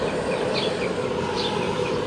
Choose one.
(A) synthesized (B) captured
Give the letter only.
B